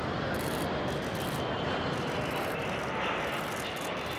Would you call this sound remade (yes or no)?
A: no